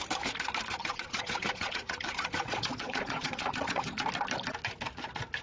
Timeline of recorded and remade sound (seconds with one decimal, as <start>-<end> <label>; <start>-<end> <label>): 0.0-0.8 recorded; 0.8-4.0 remade; 4.0-5.4 recorded